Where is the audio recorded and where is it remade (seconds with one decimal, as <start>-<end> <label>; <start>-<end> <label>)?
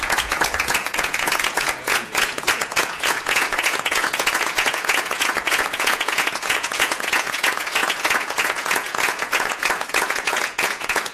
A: 0.0-11.1 remade